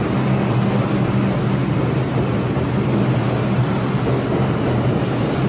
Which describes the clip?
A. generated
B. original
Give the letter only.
B